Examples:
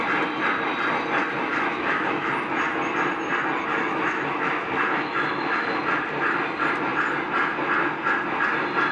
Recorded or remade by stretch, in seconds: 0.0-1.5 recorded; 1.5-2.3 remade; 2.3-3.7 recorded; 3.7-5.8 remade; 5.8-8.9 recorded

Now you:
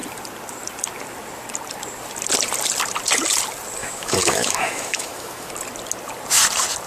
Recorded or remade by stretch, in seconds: 0.0-3.8 recorded; 3.8-5.5 remade; 5.5-6.9 recorded

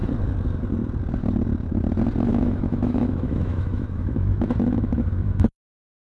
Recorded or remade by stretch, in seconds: 0.0-2.3 recorded; 2.3-6.1 remade